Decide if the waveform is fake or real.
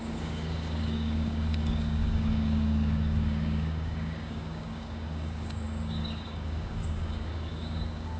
fake